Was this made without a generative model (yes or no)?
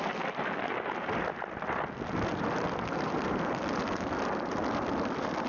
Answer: yes